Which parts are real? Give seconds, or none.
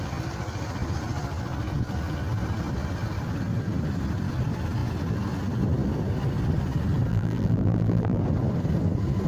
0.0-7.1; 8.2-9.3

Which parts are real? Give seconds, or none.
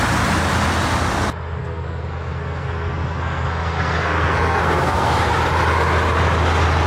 0.0-1.6; 5.3-6.9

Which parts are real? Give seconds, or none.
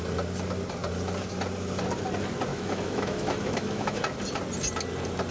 0.0-2.5; 4.0-5.3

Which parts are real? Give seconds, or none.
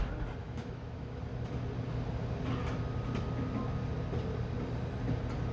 0.0-0.4; 1.2-5.5